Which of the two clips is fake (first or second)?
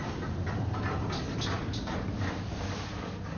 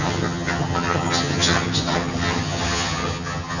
second